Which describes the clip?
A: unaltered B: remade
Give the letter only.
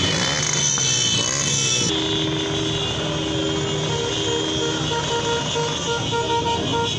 A